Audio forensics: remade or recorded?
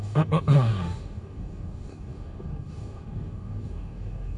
remade